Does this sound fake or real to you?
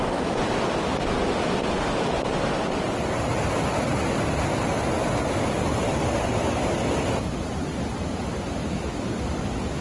real